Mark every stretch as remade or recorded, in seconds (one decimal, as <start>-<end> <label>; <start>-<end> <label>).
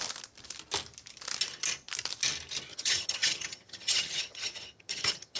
0.0-2.7 recorded; 2.7-5.4 remade